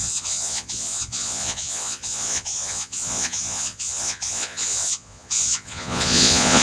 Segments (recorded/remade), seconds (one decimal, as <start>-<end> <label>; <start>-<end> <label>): 0.0-6.6 remade